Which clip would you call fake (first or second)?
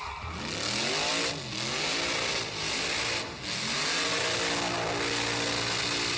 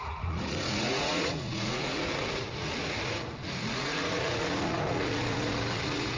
second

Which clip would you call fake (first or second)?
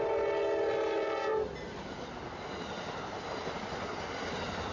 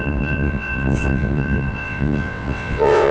second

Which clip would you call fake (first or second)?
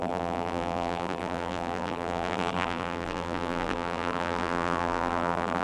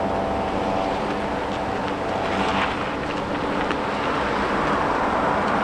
first